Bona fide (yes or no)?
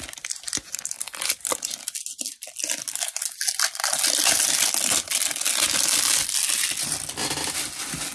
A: yes